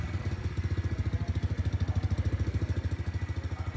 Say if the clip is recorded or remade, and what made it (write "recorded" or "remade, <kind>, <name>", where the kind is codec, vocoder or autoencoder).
recorded